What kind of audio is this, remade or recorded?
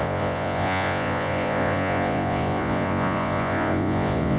remade